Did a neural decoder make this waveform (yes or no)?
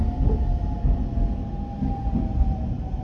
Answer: no